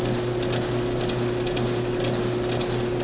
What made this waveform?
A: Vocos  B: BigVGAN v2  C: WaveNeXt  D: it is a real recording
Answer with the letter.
D